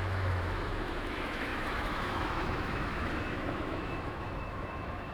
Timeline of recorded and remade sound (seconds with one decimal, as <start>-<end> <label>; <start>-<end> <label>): 0.0-5.1 remade

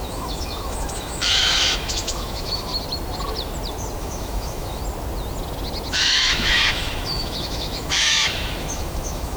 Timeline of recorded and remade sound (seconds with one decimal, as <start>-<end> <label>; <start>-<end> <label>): 0.0-2.7 remade; 2.7-4.0 recorded; 4.0-4.8 remade; 4.8-5.9 recorded; 5.9-9.4 remade